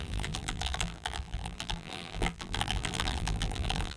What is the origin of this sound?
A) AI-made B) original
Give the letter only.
A